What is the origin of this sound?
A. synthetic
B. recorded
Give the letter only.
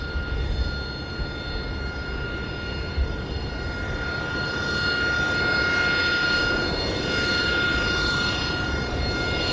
B